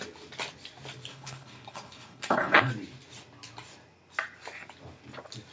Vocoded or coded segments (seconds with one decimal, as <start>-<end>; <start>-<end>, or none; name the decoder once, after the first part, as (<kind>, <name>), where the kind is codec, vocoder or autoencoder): 1.1-2.7 (codec, HILCodec)